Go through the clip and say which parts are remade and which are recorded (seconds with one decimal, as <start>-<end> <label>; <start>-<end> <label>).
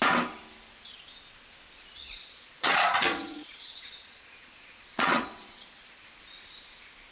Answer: 0.0-1.9 recorded; 1.9-6.2 remade; 6.2-7.1 recorded